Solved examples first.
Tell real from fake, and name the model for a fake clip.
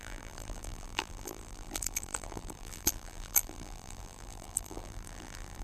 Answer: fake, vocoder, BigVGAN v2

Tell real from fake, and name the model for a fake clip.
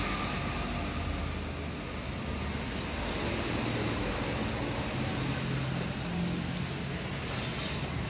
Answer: real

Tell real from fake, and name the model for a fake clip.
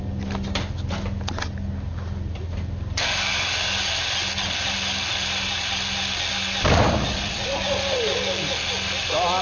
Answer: fake, vocoder, BigVGAN v2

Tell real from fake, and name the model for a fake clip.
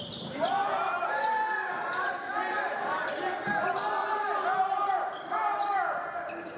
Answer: real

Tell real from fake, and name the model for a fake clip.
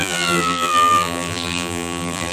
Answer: fake, vocoder, BigVGAN v2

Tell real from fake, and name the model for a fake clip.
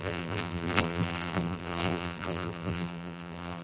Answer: fake, vocoder, BigVGAN v2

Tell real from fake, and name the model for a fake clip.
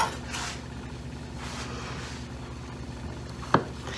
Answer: real